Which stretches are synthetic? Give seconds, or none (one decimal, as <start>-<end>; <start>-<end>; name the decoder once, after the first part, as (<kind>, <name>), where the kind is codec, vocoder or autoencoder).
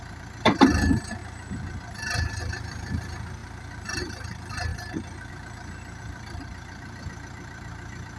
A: 0.0-1.2 (vocoder, BigVGAN v2); 2.4-4.7; 5.3-8.2